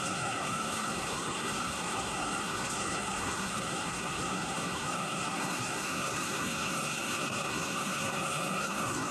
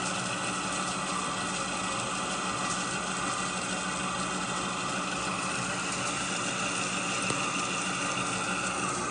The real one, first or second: second